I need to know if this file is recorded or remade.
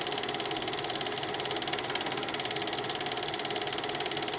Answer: recorded